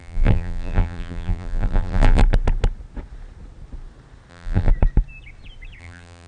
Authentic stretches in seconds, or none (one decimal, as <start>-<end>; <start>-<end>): 2.2-4.3; 4.7-5.8